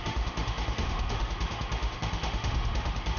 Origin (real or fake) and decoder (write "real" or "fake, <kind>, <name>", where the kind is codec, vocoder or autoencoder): fake, autoencoder, DAC-VAE